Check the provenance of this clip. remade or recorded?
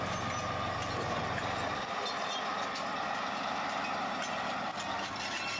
recorded